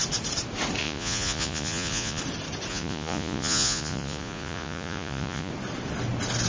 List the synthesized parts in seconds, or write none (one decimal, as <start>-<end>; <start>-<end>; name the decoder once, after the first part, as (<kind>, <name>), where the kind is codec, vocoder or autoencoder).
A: 0.8-2.2 (vocoder, Vocos); 2.7-5.5